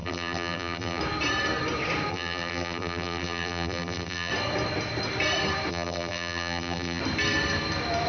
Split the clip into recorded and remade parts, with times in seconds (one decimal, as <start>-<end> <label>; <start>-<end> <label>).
0.0-1.0 remade; 1.0-2.1 recorded; 2.1-4.3 remade; 4.3-5.7 recorded; 5.7-7.0 remade; 7.0-8.1 recorded